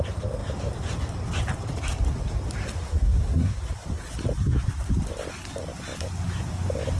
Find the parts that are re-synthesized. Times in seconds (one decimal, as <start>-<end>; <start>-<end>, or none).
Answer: 2.9-3.6